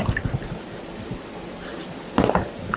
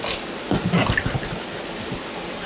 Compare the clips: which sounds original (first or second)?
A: second